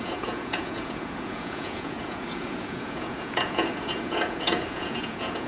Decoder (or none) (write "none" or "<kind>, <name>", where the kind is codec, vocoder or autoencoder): vocoder, Vocos